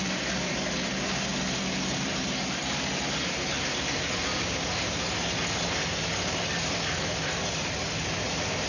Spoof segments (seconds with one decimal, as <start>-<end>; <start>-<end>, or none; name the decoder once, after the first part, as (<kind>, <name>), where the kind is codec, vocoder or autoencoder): none